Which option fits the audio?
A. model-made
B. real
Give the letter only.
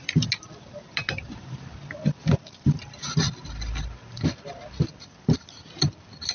B